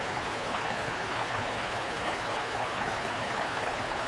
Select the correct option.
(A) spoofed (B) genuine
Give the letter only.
A